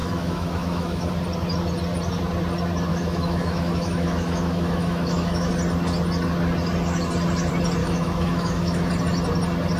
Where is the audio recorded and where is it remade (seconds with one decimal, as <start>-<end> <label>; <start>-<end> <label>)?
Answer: 0.0-1.1 remade; 1.1-2.9 recorded; 2.9-5.5 remade; 5.5-7.8 recorded; 7.8-8.9 remade; 8.9-9.8 recorded